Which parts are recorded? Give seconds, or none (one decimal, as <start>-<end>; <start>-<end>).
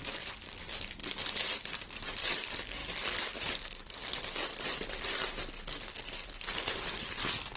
0.0-7.6